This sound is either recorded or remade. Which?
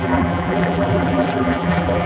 remade